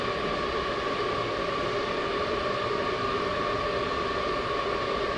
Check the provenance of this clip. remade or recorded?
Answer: recorded